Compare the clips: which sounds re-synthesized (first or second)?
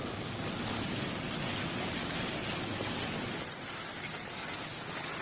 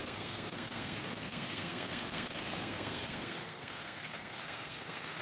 second